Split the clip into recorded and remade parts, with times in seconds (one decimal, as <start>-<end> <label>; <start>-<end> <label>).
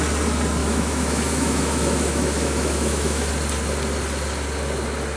0.0-0.6 recorded; 0.6-3.3 remade; 3.3-5.2 recorded